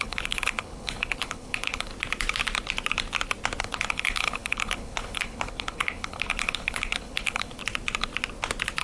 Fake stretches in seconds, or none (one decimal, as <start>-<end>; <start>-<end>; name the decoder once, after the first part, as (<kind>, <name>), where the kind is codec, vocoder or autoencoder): 0.0-1.9 (codec, HILCodec); 3.6-7.6